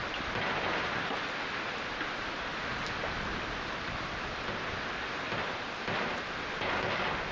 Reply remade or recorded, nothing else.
recorded